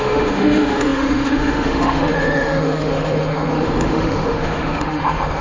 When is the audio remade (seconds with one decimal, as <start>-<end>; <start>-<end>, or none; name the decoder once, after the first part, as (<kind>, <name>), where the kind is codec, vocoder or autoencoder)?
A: 0.0-5.4 (autoencoder, DAC-VAE)